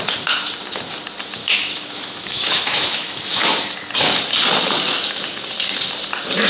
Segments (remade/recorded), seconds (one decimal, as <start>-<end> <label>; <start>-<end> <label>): 0.0-1.4 recorded; 1.4-3.5 remade; 3.5-6.5 recorded